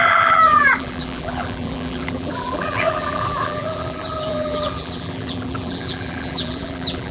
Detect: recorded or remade remade